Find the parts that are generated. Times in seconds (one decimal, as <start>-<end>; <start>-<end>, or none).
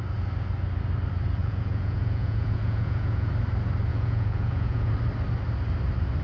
1.4-3.3; 3.9-4.9